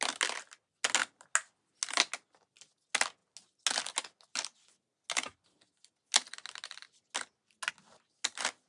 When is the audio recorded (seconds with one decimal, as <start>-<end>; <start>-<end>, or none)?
0.0-8.7